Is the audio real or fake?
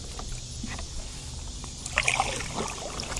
real